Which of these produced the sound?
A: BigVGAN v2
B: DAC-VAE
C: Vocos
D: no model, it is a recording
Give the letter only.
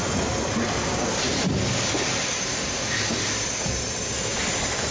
D